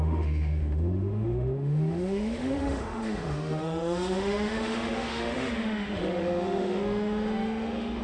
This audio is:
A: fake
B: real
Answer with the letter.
A